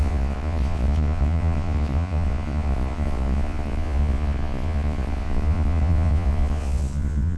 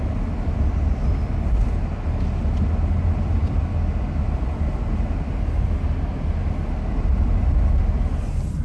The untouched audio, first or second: second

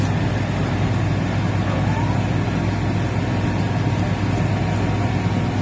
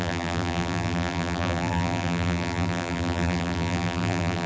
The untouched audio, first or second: first